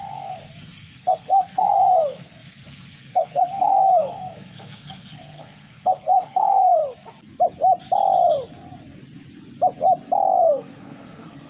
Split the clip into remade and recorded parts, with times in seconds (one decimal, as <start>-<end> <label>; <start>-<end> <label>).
0.0-6.8 remade; 6.8-10.4 recorded; 10.4-11.5 remade